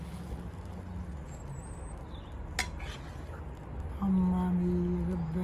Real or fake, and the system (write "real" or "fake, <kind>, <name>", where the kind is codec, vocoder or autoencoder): real